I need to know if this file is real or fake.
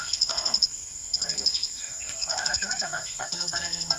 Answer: fake